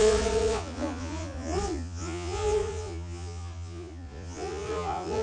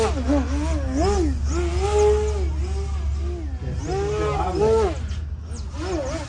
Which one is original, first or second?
second